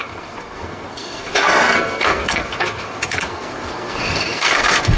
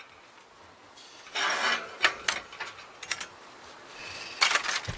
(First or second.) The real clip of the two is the second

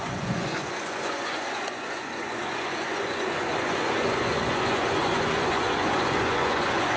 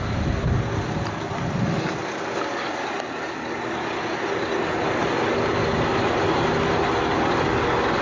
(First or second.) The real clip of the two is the second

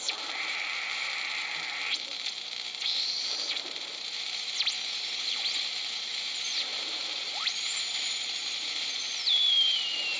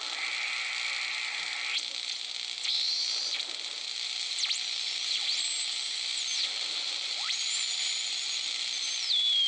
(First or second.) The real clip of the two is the second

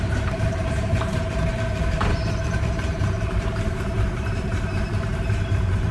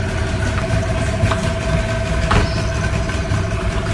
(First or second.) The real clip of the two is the second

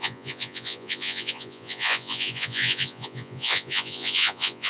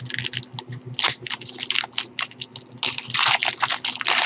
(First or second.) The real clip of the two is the second